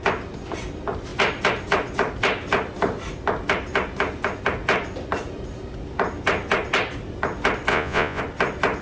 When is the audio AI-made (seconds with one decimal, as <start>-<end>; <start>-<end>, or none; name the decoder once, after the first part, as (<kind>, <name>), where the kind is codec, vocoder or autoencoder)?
7.7-8.2 (vocoder, Vocos)